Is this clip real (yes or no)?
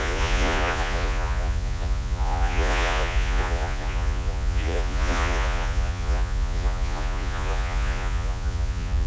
no